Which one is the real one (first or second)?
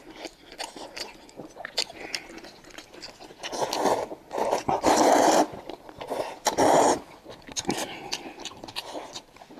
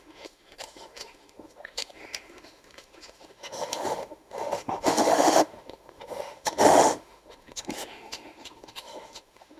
first